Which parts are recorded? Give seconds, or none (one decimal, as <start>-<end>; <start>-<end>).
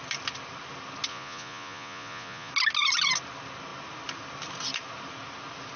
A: 0.0-1.1; 2.5-5.8